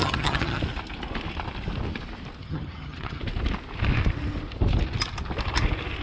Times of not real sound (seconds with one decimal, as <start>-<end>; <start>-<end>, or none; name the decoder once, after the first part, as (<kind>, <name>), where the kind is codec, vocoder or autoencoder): 0.0-0.6 (vocoder, HiFi-GAN); 2.4-3.2